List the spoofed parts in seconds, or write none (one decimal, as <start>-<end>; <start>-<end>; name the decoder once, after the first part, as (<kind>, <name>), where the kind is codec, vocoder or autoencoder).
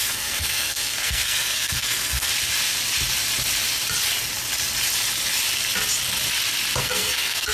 0.0-2.3 (codec, SNAC); 6.8-7.5